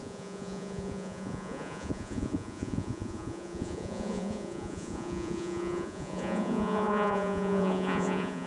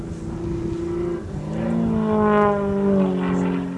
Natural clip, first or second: second